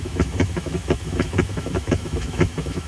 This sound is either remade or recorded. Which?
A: remade